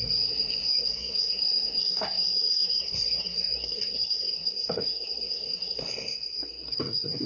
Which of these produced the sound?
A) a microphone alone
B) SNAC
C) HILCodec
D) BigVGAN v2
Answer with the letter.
B